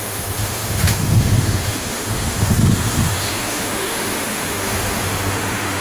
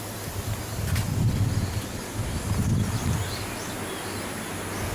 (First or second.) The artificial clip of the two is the first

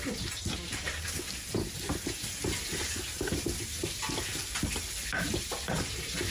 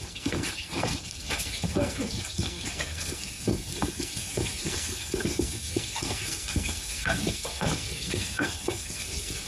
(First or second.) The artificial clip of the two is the second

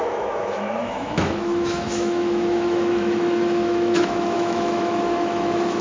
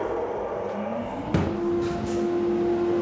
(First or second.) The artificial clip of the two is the first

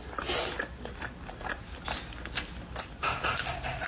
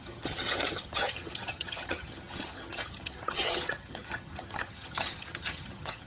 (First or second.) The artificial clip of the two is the second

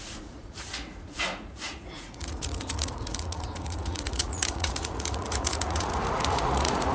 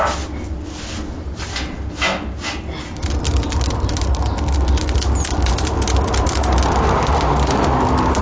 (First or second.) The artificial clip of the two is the first